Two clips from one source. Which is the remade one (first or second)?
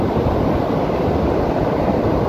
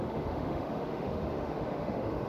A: second